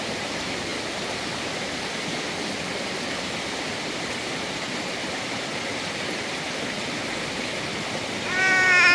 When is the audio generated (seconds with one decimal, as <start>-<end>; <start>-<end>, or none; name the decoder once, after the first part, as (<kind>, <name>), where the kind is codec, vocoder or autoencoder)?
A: none